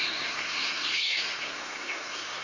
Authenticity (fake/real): fake